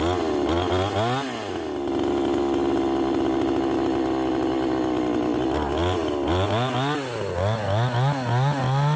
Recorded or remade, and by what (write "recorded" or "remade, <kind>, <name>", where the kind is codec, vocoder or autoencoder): recorded